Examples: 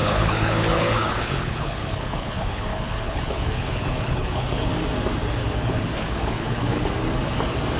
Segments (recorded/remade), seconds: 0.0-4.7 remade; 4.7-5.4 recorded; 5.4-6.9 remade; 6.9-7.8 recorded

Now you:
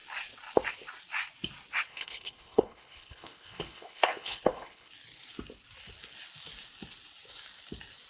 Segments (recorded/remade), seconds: 0.0-1.9 recorded; 1.9-4.9 remade; 4.9-8.1 recorded

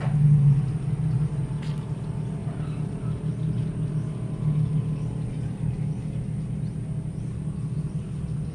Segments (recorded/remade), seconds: 0.0-8.5 recorded

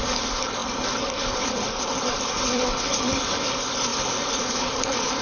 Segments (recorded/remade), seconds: 0.0-5.2 remade

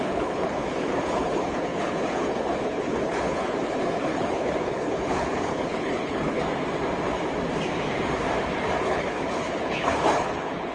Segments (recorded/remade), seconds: 0.0-6.4 remade; 6.4-8.8 recorded; 8.8-10.7 remade

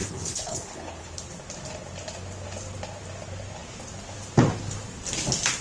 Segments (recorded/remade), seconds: 0.0-1.1 remade; 1.1-5.6 recorded

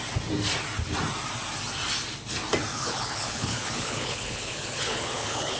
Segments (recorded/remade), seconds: 0.0-2.7 recorded; 2.7-5.6 remade